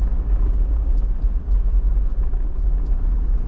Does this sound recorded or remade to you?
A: recorded